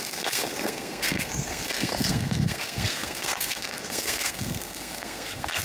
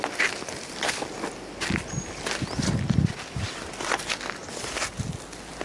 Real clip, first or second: second